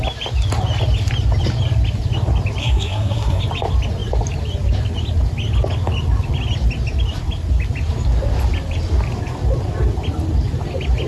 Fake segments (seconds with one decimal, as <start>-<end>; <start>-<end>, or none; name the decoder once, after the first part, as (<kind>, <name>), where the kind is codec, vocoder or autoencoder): 2.6-3.4 (codec, SNAC)

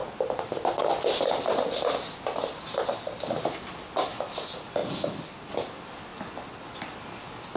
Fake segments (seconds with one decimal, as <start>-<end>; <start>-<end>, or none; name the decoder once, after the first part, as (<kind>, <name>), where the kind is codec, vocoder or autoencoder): none

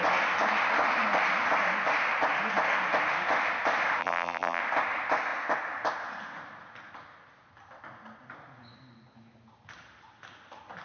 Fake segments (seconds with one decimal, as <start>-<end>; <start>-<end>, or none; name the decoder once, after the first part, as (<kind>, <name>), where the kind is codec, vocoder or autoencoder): 4.0-4.6 (vocoder, BigVGAN v2)

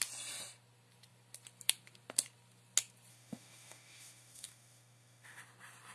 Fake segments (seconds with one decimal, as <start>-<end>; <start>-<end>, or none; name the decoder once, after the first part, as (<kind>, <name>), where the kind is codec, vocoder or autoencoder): 3.1-5.4 (autoencoder, DAC-VAE)